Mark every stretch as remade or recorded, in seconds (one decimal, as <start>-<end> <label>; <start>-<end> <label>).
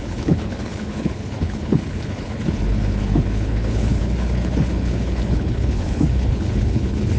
0.0-7.2 remade